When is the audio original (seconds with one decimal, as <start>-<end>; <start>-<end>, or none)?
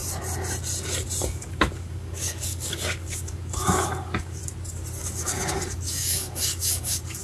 0.0-1.3; 4.4-5.0